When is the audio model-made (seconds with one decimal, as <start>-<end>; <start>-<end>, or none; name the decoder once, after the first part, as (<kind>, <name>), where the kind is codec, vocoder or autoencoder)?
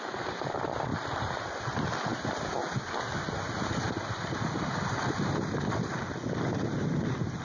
0.9-1.6 (vocoder, BigVGAN v2); 2.1-6.5